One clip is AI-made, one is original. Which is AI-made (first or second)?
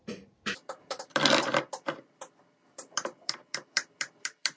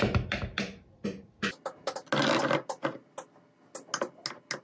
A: first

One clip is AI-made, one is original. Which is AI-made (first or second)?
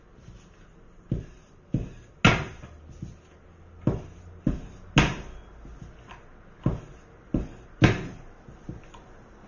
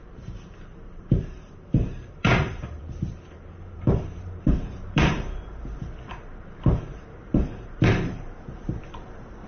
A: second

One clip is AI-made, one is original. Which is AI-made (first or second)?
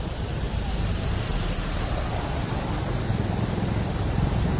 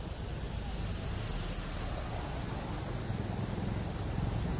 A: first